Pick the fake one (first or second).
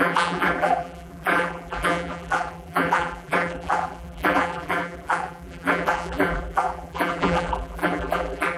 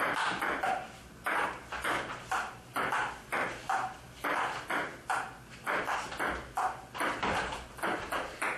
first